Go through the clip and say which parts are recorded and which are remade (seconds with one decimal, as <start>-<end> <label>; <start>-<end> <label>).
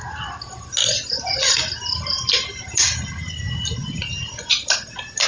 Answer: 0.0-5.3 recorded